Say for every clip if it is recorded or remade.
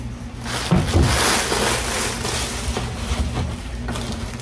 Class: recorded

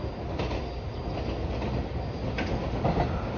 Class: recorded